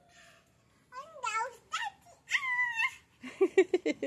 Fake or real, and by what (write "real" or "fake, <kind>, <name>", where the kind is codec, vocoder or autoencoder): real